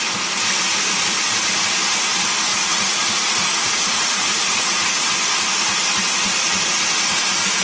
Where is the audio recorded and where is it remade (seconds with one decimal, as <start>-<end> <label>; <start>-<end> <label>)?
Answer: 0.0-2.5 recorded; 2.5-5.1 remade; 5.1-7.6 recorded